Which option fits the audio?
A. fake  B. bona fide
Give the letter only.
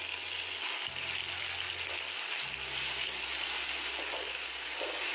B